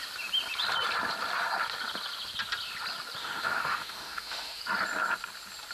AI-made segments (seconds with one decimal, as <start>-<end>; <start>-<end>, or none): 3.2-4.6